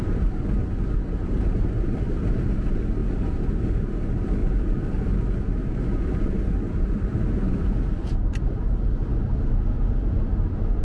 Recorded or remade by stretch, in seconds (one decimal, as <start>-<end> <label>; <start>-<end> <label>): 0.0-4.4 recorded; 4.4-5.1 remade; 5.1-9.1 recorded; 9.1-9.6 remade; 9.6-10.8 recorded

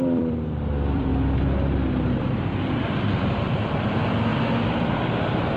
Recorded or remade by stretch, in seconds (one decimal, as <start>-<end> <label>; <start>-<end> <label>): 0.0-1.1 remade; 1.1-2.2 recorded; 2.2-4.3 remade; 4.3-5.6 recorded

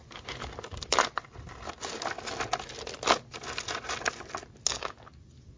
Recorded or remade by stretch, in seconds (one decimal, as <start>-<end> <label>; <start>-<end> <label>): 0.0-1.7 remade; 1.7-5.6 recorded

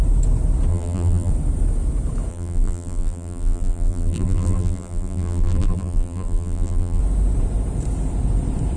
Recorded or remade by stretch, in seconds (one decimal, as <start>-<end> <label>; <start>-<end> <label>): 0.0-0.7 recorded; 0.7-1.3 remade; 1.3-2.3 recorded; 2.3-7.0 remade; 7.0-8.8 recorded